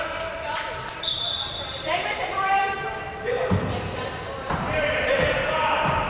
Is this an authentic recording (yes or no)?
no